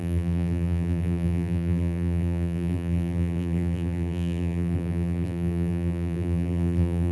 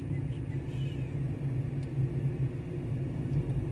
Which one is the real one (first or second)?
second